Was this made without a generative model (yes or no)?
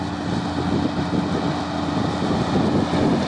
yes